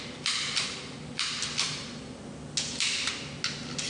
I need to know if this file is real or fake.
real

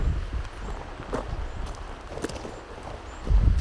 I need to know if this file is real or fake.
real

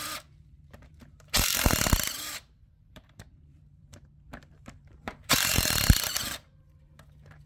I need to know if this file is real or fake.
fake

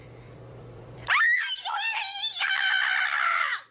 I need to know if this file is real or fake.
fake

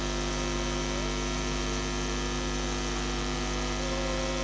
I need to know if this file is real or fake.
fake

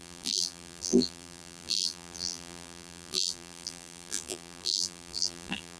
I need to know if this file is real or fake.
fake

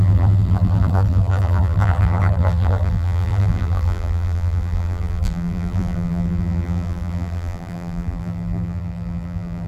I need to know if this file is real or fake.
fake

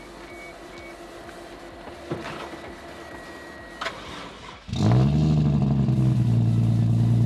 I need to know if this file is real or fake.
real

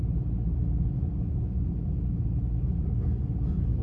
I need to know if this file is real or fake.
real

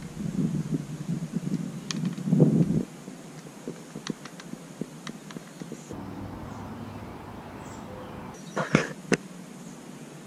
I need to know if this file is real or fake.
real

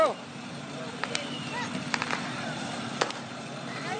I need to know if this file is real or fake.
fake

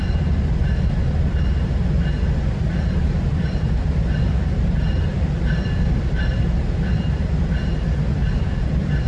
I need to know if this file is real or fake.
fake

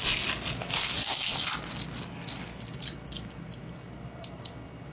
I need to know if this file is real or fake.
real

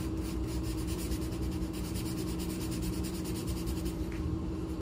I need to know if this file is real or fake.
fake